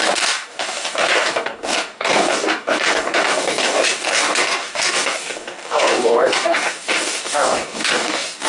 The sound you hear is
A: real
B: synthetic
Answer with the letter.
B